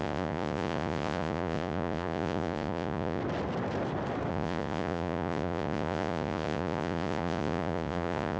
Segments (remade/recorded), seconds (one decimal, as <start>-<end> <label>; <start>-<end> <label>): 0.0-3.2 remade; 3.2-4.3 recorded; 4.3-8.4 remade